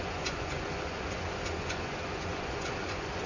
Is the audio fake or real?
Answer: fake